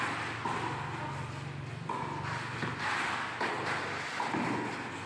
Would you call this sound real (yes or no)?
yes